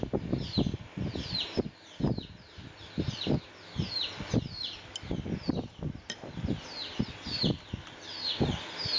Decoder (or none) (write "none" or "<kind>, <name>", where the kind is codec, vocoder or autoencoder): none